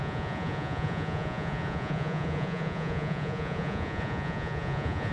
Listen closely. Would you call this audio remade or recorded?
remade